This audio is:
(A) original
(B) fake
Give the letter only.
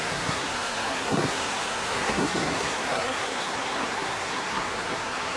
B